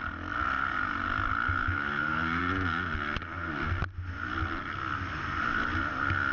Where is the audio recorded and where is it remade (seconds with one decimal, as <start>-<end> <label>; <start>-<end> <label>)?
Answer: 0.0-1.6 recorded; 1.6-2.4 remade; 2.4-6.3 recorded